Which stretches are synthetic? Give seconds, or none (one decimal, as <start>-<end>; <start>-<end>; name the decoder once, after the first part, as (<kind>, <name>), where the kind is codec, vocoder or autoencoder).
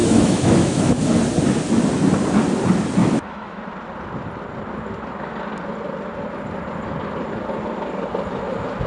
0.0-1.0 (autoencoder, DAC-VAE); 3.0-3.6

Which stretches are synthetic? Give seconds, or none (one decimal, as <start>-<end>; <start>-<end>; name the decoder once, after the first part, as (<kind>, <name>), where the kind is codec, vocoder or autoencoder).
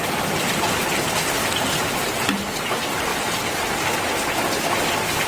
none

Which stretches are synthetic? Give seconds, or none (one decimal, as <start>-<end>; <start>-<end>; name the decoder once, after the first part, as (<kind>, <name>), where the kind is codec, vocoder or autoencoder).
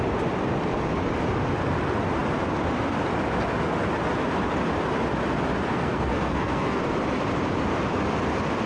5.7-6.8 (codec, SNAC)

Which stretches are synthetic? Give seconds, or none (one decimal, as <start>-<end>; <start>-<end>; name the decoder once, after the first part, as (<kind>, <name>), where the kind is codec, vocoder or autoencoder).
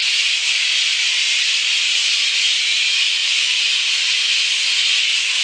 0.9-1.4 (vocoder, BigVGAN v2); 3.2-4.1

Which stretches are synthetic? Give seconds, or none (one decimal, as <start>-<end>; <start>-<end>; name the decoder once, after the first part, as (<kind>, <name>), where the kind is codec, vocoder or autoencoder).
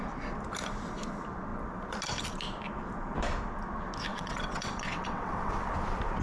4.1-5.7 (vocoder, WaveNeXt)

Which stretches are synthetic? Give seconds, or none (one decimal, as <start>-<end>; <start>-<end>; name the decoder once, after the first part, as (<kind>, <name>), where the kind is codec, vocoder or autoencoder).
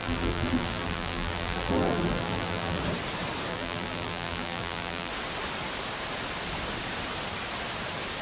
0.0-2.8 (vocoder, BigVGAN v2); 3.5-5.1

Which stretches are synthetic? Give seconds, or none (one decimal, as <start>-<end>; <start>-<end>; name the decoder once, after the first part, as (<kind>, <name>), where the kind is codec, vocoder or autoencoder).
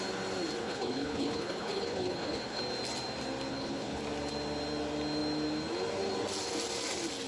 0.6-2.6 (codec, HILCodec); 3.5-4.0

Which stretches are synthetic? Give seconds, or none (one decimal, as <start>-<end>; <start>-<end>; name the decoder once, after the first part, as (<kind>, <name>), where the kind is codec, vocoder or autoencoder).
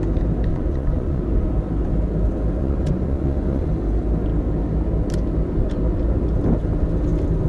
0.5-1.2 (vocoder, Vocos); 2.6-3.7